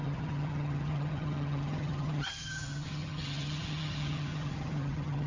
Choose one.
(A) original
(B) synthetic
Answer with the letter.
B